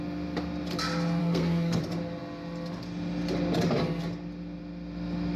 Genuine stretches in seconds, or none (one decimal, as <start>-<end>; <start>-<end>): 0.0-1.2; 1.8-5.4